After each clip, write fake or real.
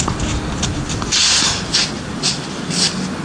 real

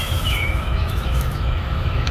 fake